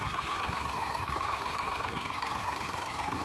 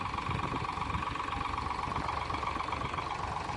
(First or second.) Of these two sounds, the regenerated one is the first